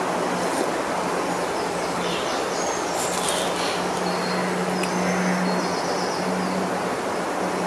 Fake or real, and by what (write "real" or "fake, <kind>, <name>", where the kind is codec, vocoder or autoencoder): real